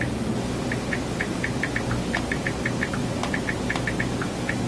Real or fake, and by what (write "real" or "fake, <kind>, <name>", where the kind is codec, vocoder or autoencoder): real